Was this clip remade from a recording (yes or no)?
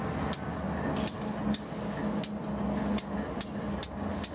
no